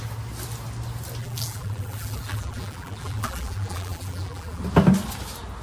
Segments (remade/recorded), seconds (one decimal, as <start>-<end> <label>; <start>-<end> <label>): 0.0-1.2 recorded; 1.2-4.6 remade; 4.6-5.6 recorded